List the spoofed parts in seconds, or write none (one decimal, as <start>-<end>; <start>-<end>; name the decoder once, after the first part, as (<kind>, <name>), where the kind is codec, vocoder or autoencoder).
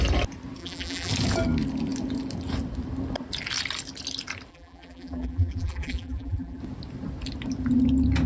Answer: 0.6-1.1 (vocoder, BigVGAN v2); 4.5-6.6